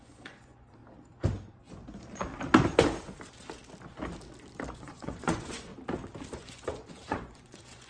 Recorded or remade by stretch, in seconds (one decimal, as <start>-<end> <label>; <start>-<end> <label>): 0.0-0.8 remade; 0.8-4.7 recorded; 4.7-5.7 remade; 5.7-6.3 recorded; 6.3-7.9 remade